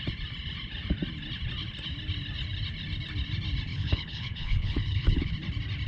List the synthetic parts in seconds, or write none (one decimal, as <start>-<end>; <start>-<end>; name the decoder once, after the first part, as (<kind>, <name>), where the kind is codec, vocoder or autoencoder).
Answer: 3.7-5.3 (codec, HILCodec)